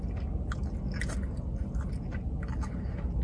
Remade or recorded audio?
recorded